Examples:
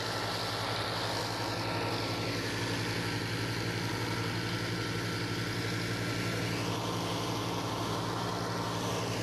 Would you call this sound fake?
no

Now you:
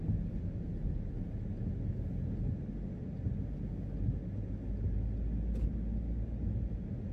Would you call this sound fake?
no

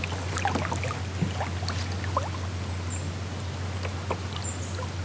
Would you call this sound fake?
no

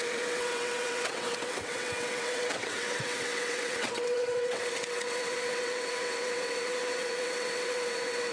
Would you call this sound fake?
yes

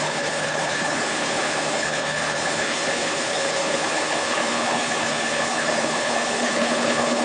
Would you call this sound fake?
yes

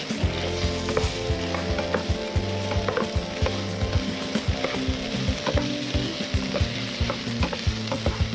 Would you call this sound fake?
no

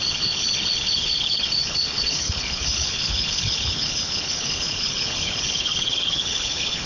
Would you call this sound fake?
yes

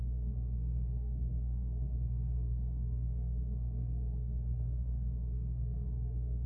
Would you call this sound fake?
yes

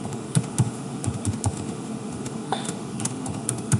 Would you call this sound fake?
yes